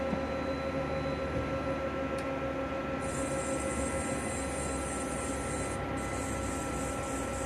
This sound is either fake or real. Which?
real